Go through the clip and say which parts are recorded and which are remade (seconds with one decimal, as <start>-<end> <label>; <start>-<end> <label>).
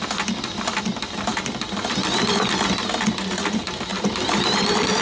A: 0.0-5.0 recorded